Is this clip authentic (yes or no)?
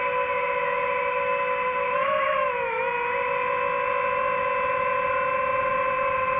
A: yes